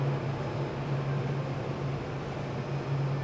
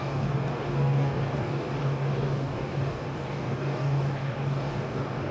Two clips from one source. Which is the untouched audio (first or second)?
first